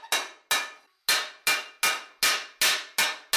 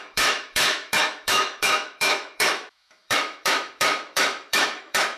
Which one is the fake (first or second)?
second